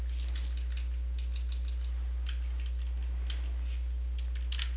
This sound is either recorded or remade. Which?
recorded